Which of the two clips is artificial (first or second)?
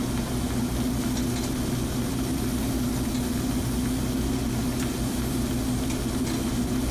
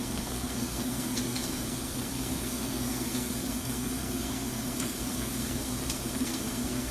second